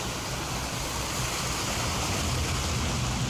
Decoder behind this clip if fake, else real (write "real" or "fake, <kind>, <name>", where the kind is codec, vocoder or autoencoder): real